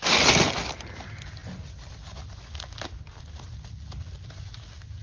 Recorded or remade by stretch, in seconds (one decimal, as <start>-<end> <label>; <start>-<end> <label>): 0.0-5.0 recorded